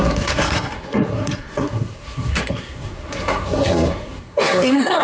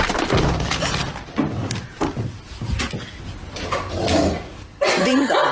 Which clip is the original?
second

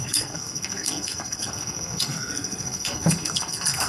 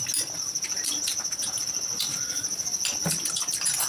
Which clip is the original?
second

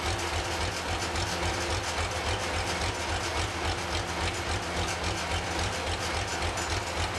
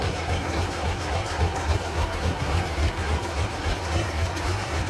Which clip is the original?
first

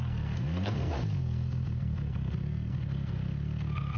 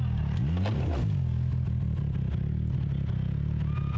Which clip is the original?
second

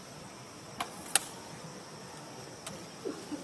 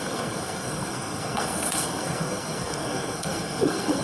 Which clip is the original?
first